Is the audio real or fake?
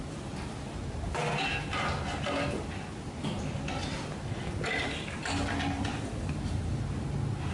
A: real